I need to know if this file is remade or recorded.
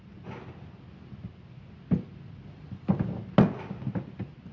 recorded